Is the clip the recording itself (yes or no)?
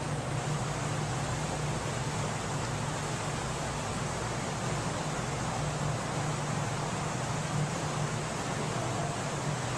yes